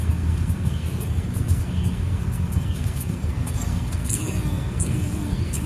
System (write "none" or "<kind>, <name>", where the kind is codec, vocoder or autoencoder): codec, SNAC